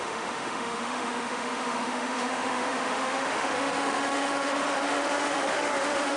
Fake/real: fake